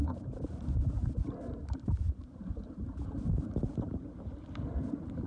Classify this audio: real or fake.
fake